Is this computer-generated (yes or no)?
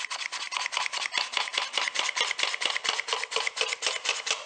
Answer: no